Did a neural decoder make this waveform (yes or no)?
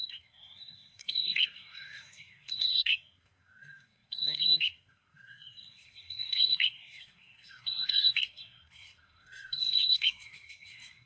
yes